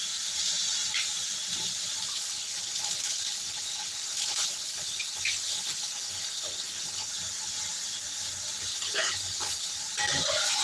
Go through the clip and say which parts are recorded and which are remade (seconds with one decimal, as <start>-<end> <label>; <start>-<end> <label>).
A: 0.0-2.1 recorded; 2.1-7.1 remade; 7.1-8.7 recorded; 8.7-9.8 remade; 9.8-10.6 recorded